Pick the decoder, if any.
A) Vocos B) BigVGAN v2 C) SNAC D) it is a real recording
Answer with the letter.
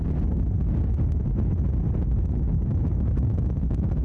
D